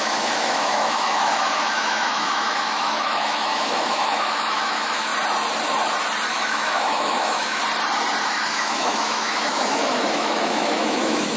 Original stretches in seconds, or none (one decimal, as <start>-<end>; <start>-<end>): 5.1-6.3; 7.6-8.2

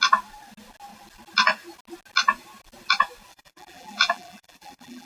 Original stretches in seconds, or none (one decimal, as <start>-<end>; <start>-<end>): 0.0-3.3

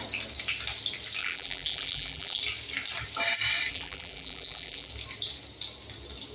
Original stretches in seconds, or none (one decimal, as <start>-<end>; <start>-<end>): 0.0-1.2; 2.4-3.7; 4.9-6.3

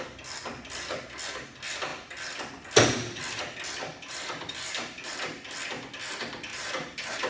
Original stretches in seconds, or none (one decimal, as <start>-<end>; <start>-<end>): 0.0-3.9; 5.1-6.5

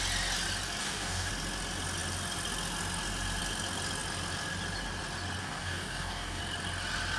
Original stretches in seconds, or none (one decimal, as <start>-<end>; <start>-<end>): 0.0-0.8; 1.3-5.4; 6.4-7.2

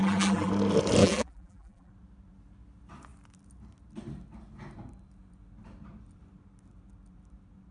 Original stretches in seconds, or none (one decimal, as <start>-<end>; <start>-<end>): 0.5-1.0; 1.9-7.7